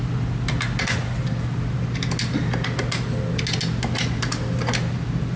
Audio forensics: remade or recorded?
recorded